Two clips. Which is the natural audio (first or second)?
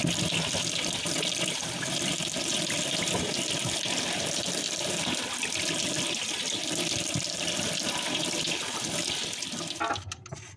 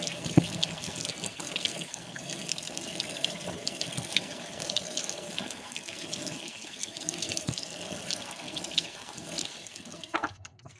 first